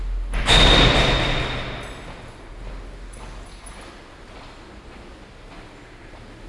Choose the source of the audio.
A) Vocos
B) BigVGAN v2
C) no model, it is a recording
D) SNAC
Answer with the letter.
C